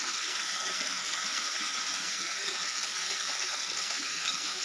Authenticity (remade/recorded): remade